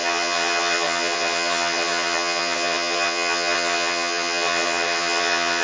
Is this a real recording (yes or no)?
no